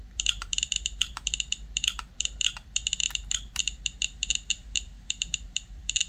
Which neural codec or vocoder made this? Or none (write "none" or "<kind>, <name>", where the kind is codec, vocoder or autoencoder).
vocoder, BigVGAN v2